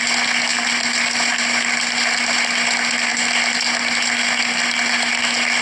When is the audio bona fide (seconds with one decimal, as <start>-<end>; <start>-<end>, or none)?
0.0-5.6